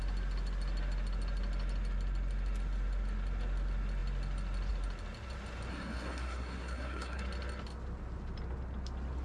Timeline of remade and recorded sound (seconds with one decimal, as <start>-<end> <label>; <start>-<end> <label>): 0.0-5.7 recorded; 5.7-7.2 remade; 7.2-9.2 recorded

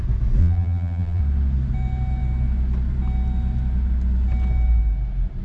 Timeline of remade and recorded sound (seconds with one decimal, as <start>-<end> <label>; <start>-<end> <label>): 0.0-0.4 recorded; 0.4-1.2 remade; 1.2-5.4 recorded

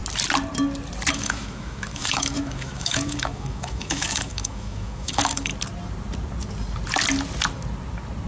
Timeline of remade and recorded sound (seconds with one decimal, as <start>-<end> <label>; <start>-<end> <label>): 0.0-1.1 recorded; 1.1-5.5 remade; 5.5-8.3 recorded

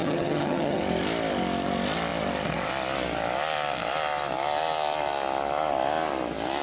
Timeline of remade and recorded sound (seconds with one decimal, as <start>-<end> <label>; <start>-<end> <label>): 0.0-0.8 remade; 0.8-6.6 recorded